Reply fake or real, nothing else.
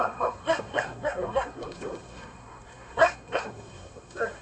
fake